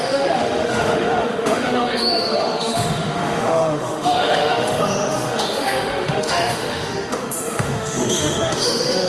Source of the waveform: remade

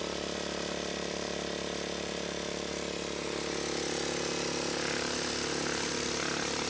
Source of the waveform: recorded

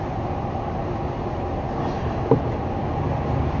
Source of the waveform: recorded